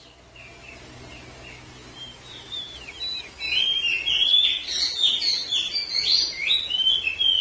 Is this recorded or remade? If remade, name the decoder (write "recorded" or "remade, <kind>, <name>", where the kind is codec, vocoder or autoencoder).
recorded